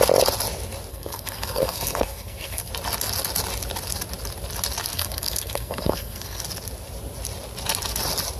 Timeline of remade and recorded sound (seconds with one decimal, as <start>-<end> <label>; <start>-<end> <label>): 0.0-0.9 recorded; 0.9-2.7 remade; 2.7-4.9 recorded; 4.9-6.4 remade; 6.4-8.4 recorded